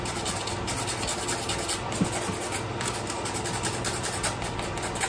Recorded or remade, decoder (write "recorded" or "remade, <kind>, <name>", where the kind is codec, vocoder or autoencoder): recorded